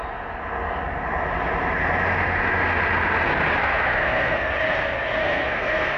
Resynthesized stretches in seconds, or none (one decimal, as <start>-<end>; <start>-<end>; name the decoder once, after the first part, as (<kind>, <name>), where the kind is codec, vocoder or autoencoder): 3.6-4.5 (codec, SNAC); 5.2-6.0